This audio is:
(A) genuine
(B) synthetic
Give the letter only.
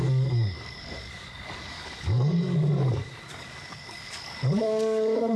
B